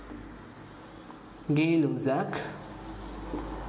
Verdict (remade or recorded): recorded